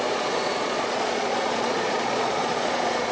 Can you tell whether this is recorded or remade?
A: remade